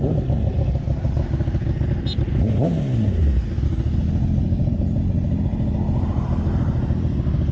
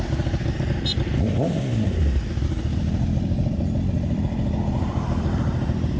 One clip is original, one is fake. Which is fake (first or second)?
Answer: second